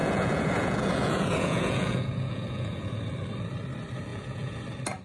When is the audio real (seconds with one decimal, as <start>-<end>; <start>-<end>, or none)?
3.0-4.1; 4.6-5.0